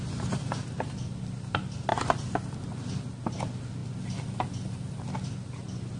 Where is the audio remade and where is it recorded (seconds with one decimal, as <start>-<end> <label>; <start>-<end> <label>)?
0.0-6.0 recorded